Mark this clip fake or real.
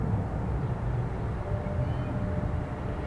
real